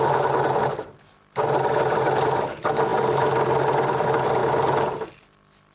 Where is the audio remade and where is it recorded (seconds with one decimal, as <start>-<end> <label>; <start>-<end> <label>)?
0.0-5.7 recorded